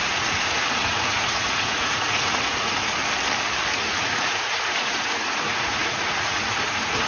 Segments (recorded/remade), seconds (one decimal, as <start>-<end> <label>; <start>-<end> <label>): 0.0-3.0 remade; 3.0-3.8 recorded; 3.8-7.1 remade